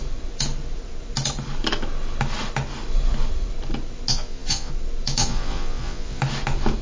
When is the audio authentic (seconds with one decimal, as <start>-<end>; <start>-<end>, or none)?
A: 0.0-4.1; 4.7-5.2; 6.2-6.8